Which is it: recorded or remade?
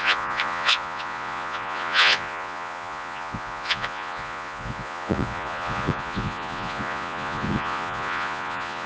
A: remade